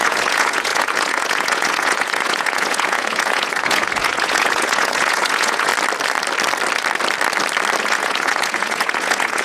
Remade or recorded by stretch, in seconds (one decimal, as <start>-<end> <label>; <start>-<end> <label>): 0.0-5.7 remade; 5.7-7.8 recorded; 7.8-9.4 remade